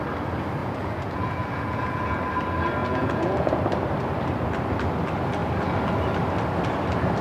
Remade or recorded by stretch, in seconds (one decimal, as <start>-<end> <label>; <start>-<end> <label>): 0.0-0.6 recorded; 0.6-2.2 remade; 2.2-2.8 recorded; 2.8-3.6 remade; 3.6-7.2 recorded